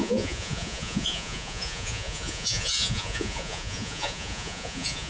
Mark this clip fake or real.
fake